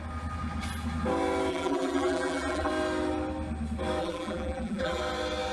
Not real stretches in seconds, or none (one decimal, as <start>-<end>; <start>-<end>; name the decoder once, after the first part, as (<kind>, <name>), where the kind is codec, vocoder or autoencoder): 1.5-2.7 (vocoder, BigVGAN v2); 4.0-5.0